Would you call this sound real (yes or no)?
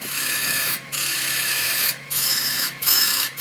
no